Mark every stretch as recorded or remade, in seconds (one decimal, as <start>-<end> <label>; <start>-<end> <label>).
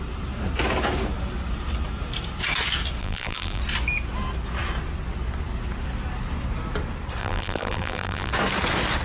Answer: 0.0-3.0 recorded; 3.0-3.6 remade; 3.6-7.2 recorded; 7.2-8.3 remade; 8.3-9.0 recorded